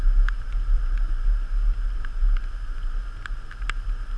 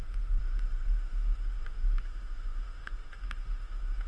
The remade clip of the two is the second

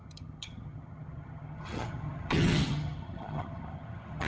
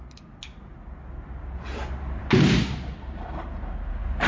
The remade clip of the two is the first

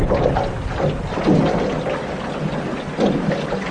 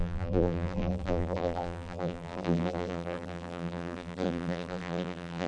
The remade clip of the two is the second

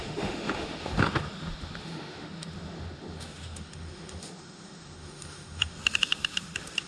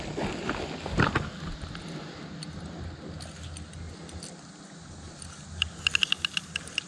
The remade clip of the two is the first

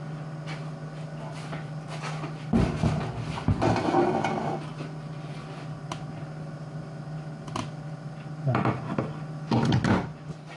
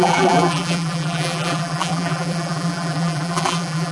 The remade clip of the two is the second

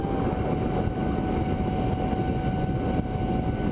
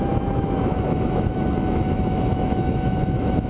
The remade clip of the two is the second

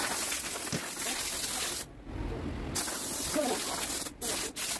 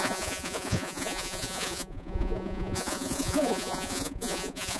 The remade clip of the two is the second